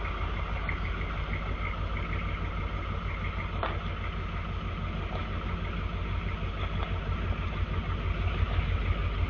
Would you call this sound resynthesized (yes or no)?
no